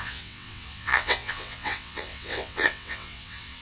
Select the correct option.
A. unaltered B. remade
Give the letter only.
B